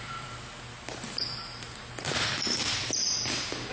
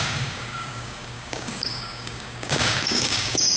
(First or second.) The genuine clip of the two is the first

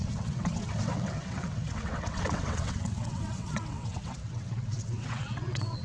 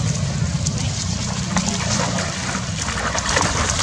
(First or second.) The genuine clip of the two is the second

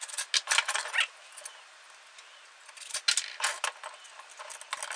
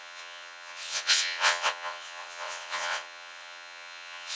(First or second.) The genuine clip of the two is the first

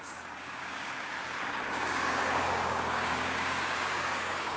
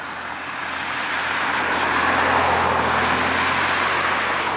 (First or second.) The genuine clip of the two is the second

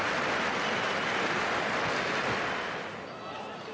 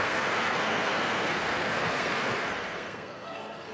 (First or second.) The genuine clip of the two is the first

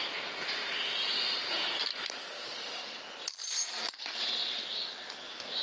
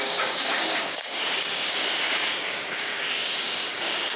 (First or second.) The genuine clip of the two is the first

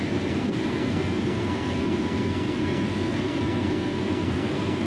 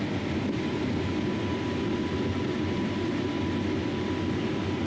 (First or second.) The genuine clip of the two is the second